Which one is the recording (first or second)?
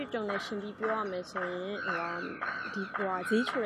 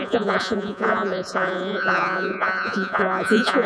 first